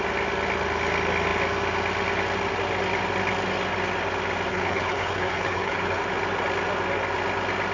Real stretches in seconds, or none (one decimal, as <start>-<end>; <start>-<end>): 0.0-4.5; 6.0-7.7